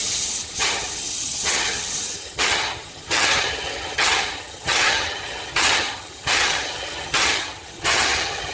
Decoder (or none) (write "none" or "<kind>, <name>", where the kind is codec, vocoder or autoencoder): vocoder, HiFi-GAN